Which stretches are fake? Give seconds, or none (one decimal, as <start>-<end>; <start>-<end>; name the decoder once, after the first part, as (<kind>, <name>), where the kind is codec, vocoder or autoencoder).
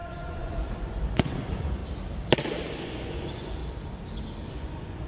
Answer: 0.0-1.8 (vocoder, Vocos); 2.8-3.6; 4.5-5.1